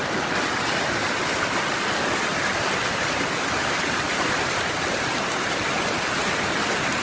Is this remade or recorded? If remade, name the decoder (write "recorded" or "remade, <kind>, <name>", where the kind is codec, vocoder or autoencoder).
recorded